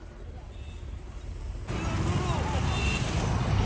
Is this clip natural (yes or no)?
yes